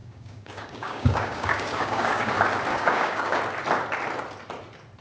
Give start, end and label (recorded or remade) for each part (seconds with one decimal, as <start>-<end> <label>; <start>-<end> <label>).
0.0-2.3 remade; 2.3-2.7 recorded; 2.7-3.4 remade; 3.4-5.0 recorded